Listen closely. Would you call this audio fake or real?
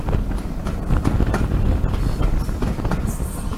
real